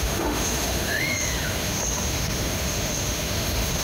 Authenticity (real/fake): fake